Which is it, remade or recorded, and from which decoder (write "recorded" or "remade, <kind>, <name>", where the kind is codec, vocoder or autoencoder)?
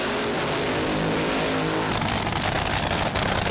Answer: recorded